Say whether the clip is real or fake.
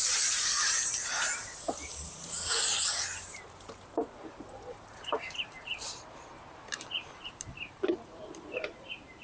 fake